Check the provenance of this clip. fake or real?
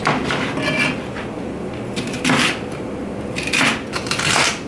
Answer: real